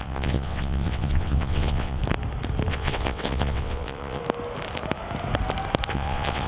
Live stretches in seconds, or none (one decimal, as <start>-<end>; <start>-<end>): 2.0-2.7; 4.2-5.9